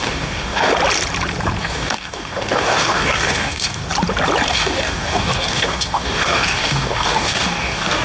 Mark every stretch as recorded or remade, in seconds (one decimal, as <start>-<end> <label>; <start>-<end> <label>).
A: 0.0-0.7 remade; 0.7-1.6 recorded; 1.6-3.8 remade; 3.8-4.5 recorded; 4.5-8.0 remade